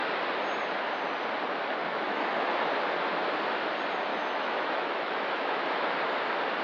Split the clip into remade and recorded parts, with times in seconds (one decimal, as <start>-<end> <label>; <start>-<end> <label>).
0.0-1.8 recorded; 1.8-2.7 remade; 2.7-4.1 recorded; 4.1-5.7 remade; 5.7-6.6 recorded